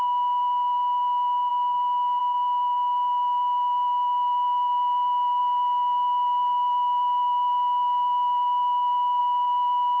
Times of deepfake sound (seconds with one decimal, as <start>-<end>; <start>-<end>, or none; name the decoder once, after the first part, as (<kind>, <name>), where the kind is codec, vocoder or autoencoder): 1.5-2.2 (autoencoder, DAC-VAE); 5.4-9.2